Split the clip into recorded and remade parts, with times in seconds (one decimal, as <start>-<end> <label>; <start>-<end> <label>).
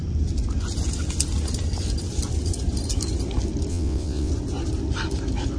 0.0-3.7 recorded; 3.7-4.3 remade; 4.3-5.6 recorded